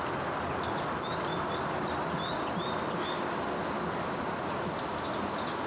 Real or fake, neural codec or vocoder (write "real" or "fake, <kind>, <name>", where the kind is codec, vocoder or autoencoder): real